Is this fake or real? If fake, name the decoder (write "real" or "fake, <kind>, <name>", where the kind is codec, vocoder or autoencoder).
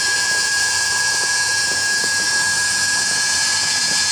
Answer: fake, vocoder, Vocos